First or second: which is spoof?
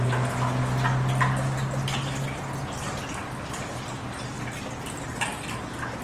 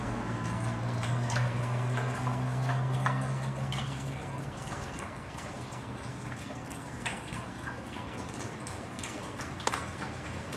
second